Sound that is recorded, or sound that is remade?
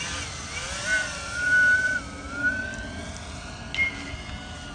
recorded